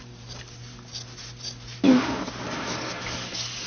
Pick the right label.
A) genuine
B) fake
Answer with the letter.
A